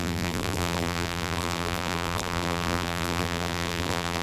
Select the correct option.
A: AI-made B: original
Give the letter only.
A